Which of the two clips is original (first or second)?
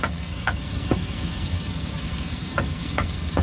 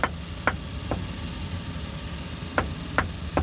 second